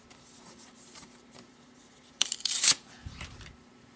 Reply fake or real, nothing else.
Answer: fake